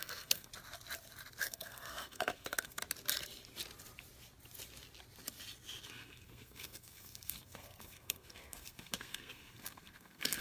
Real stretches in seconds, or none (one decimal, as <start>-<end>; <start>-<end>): 0.5-1.4; 2.8-5.8